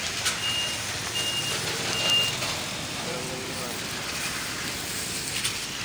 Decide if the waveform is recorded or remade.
recorded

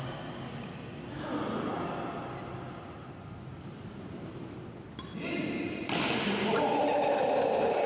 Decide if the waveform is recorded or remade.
recorded